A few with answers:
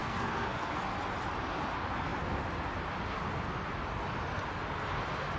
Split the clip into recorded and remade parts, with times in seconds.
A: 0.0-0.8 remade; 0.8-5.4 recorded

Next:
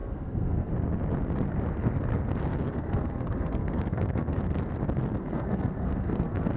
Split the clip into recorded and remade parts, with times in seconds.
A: 0.0-0.7 remade; 0.7-2.5 recorded; 2.5-4.4 remade; 4.4-5.2 recorded; 5.2-6.6 remade

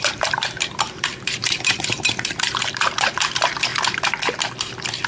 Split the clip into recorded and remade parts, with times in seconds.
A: 0.0-3.7 remade; 3.7-5.1 recorded

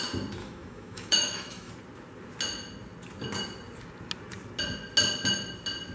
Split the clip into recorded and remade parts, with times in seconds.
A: 0.0-0.4 recorded; 0.4-1.7 remade; 1.7-5.9 recorded

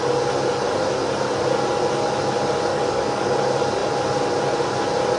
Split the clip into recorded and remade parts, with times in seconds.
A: 0.0-2.7 recorded; 2.7-3.3 remade; 3.3-5.2 recorded

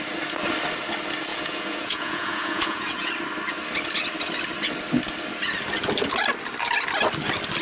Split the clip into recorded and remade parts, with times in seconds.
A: 0.0-1.3 recorded; 1.3-3.1 remade; 3.1-7.6 recorded

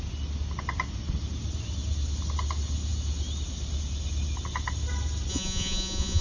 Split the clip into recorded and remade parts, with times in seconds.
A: 0.0-5.3 recorded; 5.3-6.2 remade

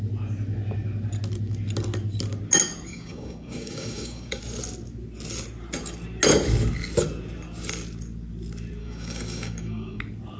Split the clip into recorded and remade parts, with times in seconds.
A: 0.0-2.9 recorded; 2.9-4.4 remade; 4.4-8.8 recorded; 8.8-10.0 remade; 10.0-10.4 recorded